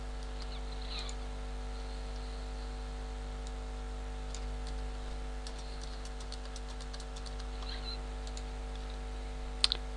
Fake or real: real